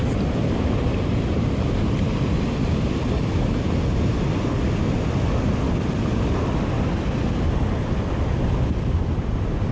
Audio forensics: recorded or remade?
recorded